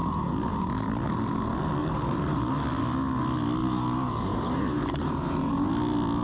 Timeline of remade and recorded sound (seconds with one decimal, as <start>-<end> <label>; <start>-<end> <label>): 0.0-1.8 recorded; 1.8-2.5 remade; 2.5-3.6 recorded; 3.6-5.5 remade; 5.5-6.2 recorded